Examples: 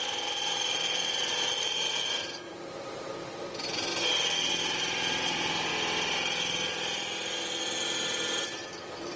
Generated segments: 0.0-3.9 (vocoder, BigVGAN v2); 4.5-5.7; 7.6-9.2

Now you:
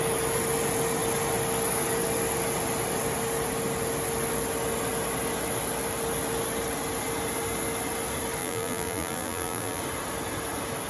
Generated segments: 8.4-9.8 (vocoder, BigVGAN v2)

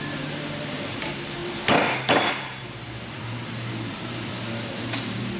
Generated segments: 0.0-4.3 (vocoder, BigVGAN v2); 4.9-5.4

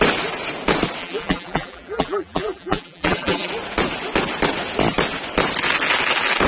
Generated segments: 1.0-3.5 (vocoder, BigVGAN v2)

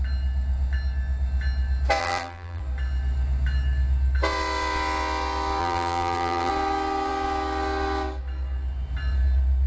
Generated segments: 2.0-2.6 (vocoder, BigVGAN v2); 5.6-6.5

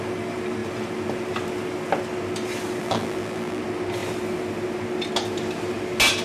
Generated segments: 2.8-3.6 (vocoder, BigVGAN v2)